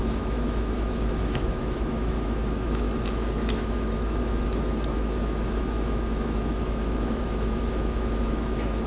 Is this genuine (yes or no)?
no